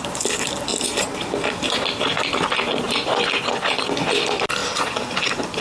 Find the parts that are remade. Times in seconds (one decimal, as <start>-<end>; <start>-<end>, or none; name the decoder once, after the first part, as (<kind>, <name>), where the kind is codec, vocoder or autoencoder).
0.0-4.6 (vocoder, BigVGAN v2)